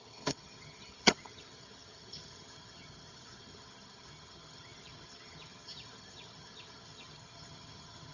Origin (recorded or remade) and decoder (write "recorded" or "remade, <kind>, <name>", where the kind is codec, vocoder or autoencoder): remade, vocoder, HiFi-GAN